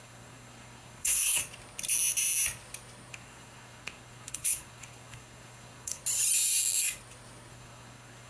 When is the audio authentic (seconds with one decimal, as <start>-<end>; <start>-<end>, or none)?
1.4-3.1; 6.0-7.5